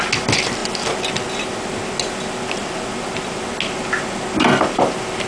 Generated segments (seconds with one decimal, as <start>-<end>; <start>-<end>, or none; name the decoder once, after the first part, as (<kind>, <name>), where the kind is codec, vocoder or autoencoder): none